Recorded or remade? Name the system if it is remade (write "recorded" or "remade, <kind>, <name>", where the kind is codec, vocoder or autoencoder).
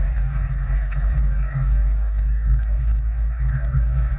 remade, codec, DAC